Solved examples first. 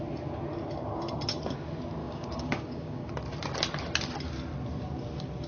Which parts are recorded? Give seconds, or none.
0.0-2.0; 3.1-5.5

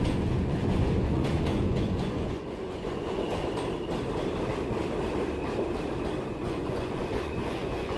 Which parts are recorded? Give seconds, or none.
3.4-6.3

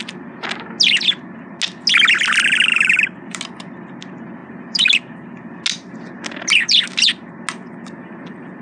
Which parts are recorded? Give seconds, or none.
0.0-2.7; 3.4-4.4; 5.6-8.6